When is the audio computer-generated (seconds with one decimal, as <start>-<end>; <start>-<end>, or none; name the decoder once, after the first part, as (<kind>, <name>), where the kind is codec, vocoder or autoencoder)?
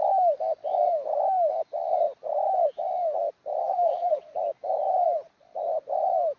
3.6-4.2 (vocoder, BigVGAN v2)